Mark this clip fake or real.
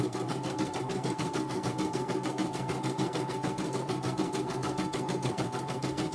fake